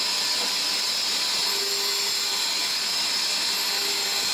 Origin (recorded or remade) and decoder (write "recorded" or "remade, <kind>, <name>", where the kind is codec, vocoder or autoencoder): recorded